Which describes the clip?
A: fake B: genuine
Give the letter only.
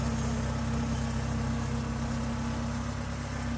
B